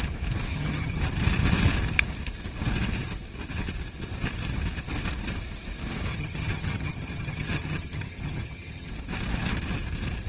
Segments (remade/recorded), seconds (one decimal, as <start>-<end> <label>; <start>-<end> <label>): 0.0-0.5 recorded; 0.5-1.0 remade; 1.0-6.1 recorded; 6.1-8.9 remade; 8.9-10.3 recorded